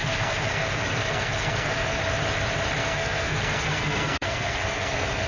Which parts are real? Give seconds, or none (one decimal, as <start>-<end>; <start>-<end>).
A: 2.0-2.8

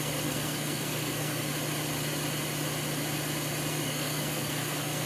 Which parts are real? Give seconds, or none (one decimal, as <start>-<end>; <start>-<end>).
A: 1.5-3.7

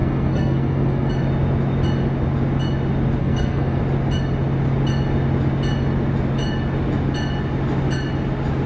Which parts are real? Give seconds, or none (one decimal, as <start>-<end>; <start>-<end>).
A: 1.1-3.2; 3.8-8.7

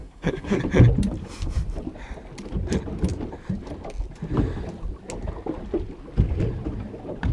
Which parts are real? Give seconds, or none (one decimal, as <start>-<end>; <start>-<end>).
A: 0.6-7.3

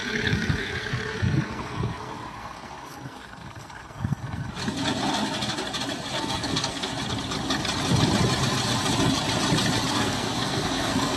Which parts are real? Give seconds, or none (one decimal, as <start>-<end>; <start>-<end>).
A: 4.6-6.2; 6.9-9.9

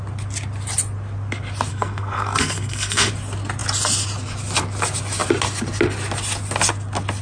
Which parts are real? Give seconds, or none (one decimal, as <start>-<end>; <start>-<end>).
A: 0.0-1.7; 3.1-7.2

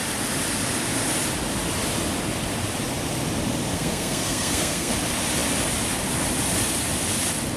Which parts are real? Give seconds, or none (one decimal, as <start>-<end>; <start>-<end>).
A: 0.0-3.7; 4.9-7.6

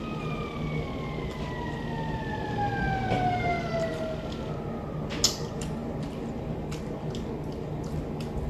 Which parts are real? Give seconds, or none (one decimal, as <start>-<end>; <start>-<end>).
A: 0.0-8.5